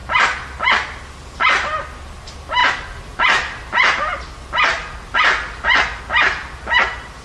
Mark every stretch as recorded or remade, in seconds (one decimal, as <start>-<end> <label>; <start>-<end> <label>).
0.0-7.2 recorded